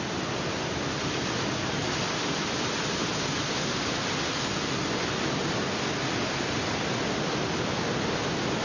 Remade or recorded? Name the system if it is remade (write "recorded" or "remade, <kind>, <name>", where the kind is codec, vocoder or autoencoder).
recorded